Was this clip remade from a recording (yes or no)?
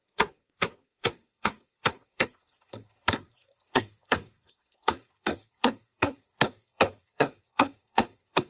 yes